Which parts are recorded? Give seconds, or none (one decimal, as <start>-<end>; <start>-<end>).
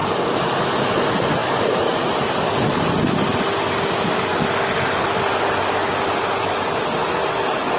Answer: 0.0-7.8